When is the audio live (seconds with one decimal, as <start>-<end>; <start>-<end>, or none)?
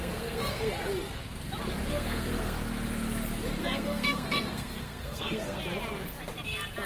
0.7-1.9; 2.7-3.6; 5.6-6.9